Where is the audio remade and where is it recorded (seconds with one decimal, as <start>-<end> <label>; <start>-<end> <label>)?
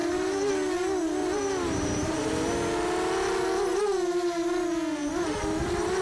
0.0-0.5 remade; 0.5-1.2 recorded; 1.2-2.5 remade; 2.5-6.0 recorded